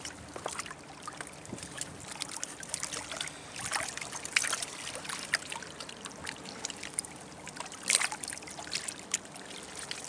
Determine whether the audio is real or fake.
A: real